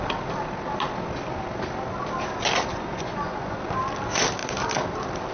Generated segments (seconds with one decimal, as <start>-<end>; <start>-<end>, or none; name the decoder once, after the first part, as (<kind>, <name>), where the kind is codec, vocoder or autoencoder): 2.7-3.6 (vocoder, Vocos)